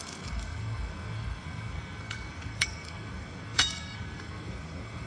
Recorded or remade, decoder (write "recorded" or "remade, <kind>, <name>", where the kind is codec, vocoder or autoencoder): remade, codec, SNAC